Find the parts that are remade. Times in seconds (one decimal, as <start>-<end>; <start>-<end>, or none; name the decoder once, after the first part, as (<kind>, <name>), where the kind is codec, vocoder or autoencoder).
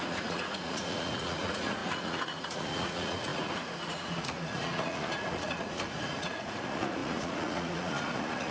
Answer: 0.0-8.5 (vocoder, Vocos)